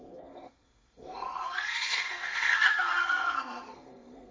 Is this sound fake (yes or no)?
yes